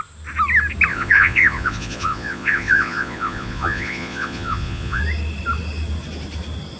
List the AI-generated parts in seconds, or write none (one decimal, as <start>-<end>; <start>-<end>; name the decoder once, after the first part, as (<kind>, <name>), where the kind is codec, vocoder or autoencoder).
0.9-5.0 (vocoder, Vocos)